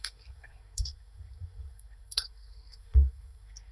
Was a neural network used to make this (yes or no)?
yes